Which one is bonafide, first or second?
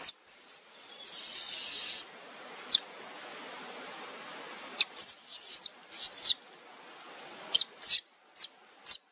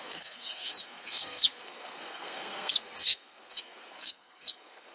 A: first